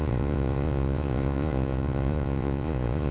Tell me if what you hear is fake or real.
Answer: fake